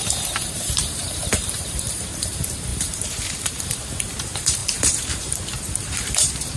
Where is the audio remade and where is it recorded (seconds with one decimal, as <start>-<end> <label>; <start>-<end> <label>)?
0.0-6.6 remade

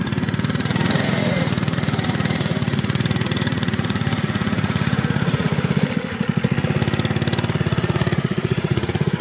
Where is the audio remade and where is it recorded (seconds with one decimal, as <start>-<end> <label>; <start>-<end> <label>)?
0.0-5.5 remade; 5.5-7.6 recorded; 7.6-9.2 remade

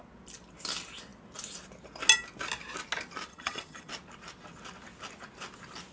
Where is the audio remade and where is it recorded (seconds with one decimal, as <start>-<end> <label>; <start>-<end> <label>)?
0.0-3.3 recorded; 3.3-3.9 remade; 3.9-5.9 recorded

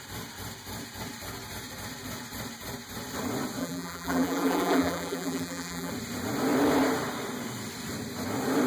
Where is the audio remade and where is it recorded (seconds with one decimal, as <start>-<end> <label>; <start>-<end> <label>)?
0.0-3.6 recorded; 3.6-5.9 remade; 5.9-8.7 recorded

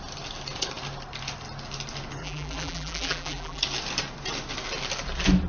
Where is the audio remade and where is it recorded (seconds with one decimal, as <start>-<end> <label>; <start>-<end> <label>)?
0.0-2.2 recorded; 2.2-3.6 remade; 3.6-5.5 recorded